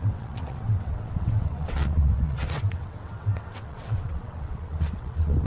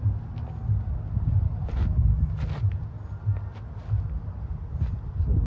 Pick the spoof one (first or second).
first